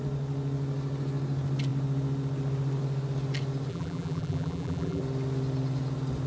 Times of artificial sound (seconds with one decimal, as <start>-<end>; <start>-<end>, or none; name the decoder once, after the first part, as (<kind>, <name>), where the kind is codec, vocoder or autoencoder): 3.7-5.0 (vocoder, BigVGAN v2)